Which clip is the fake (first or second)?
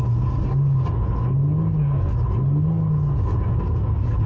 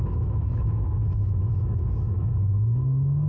second